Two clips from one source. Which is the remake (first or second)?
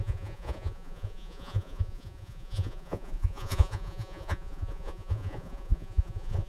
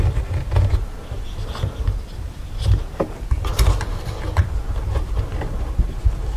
first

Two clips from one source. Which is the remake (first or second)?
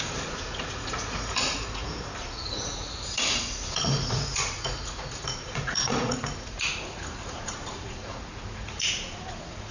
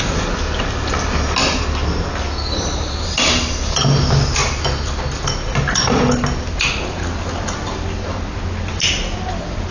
first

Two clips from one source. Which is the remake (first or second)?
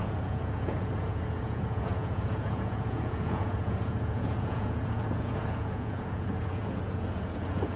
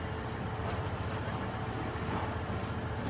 first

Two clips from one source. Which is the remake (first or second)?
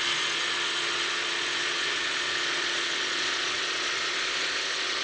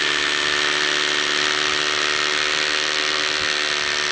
first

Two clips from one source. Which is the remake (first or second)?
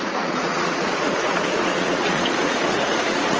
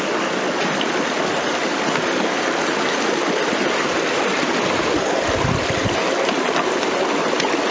first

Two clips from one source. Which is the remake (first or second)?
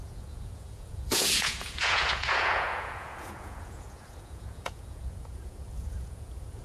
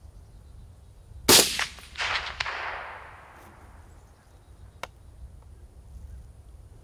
first